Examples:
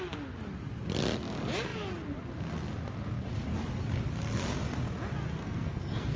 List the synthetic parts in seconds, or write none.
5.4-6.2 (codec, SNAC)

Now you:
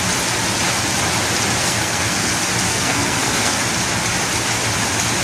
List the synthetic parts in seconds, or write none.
1.6-2.3 (codec, SNAC); 2.7-3.6

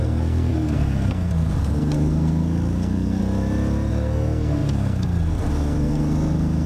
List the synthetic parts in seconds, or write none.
0.0-3.2 (codec, SNAC); 3.9-6.7

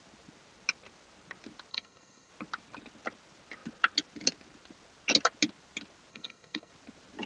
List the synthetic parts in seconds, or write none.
1.7-2.3 (codec, SNAC); 6.1-6.7

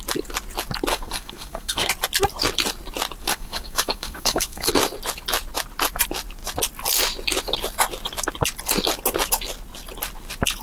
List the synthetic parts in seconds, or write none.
0.9-1.9 (codec, SNAC); 3.2-4.7

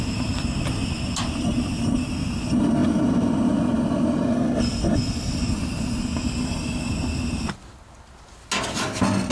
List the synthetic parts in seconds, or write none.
none

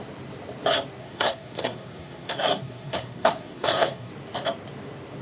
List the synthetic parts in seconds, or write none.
1.0-4.1 (codec, SNAC)